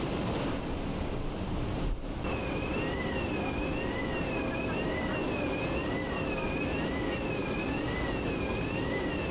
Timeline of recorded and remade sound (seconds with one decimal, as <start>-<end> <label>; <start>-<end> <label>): 0.0-9.3 recorded